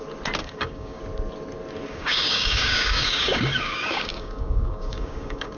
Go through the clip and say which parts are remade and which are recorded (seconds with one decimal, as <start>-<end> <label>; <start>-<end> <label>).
0.0-0.4 recorded; 0.4-1.0 remade; 1.0-1.9 recorded; 1.9-5.6 remade

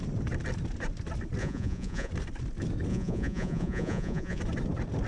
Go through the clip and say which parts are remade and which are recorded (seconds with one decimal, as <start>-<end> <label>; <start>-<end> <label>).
0.0-1.4 recorded; 1.4-2.1 remade; 2.1-2.9 recorded; 2.9-4.4 remade; 4.4-5.1 recorded

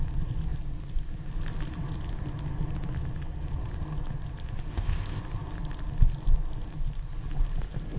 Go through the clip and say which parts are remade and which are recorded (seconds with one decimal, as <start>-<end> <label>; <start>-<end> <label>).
0.0-4.7 recorded; 4.7-5.2 remade; 5.2-8.0 recorded

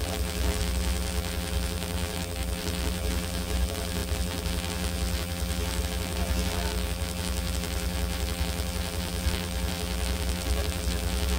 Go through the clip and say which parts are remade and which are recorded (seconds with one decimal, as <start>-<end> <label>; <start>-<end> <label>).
0.0-11.4 remade

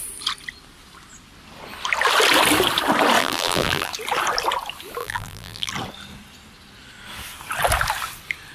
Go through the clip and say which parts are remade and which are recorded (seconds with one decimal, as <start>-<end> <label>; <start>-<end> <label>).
0.0-3.2 recorded; 3.2-3.9 remade; 3.9-5.0 recorded; 5.0-5.7 remade; 5.7-8.5 recorded

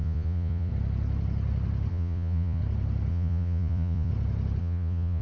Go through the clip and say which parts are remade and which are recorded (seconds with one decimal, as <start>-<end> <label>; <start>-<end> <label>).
0.0-0.7 remade; 0.7-1.9 recorded; 1.9-2.6 remade; 2.6-3.1 recorded; 3.1-4.1 remade; 4.1-4.6 recorded; 4.6-5.2 remade

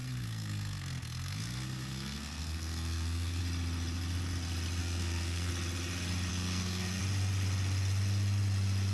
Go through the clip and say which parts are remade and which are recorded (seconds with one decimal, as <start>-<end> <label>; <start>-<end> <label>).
0.0-3.4 remade; 3.4-4.8 recorded; 4.8-5.5 remade; 5.5-6.3 recorded; 6.3-7.0 remade; 7.0-8.9 recorded